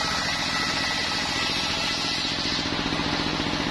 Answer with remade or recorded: recorded